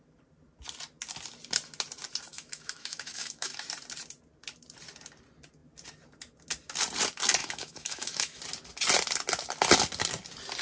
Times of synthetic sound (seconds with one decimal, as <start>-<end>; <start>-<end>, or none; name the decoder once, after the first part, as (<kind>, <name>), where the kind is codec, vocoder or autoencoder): 2.3-3.5 (autoencoder, DAC-VAE); 7.4-8.4